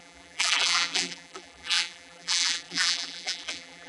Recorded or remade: remade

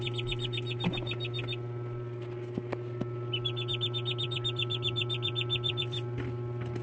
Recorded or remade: recorded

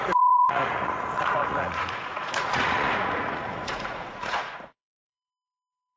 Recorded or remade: remade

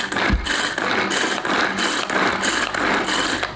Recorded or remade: recorded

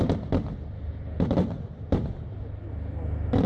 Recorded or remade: recorded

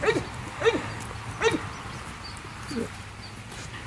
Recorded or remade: recorded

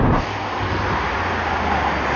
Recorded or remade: recorded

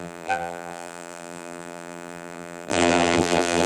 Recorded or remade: remade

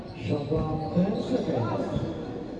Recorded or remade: recorded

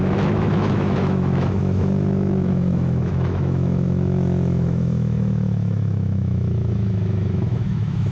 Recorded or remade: remade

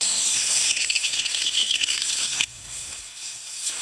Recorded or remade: remade